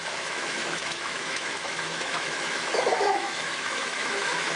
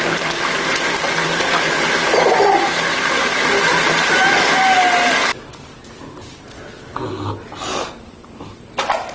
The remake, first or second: first